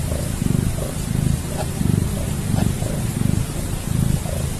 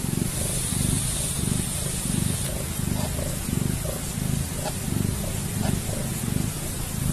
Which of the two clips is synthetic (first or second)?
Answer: first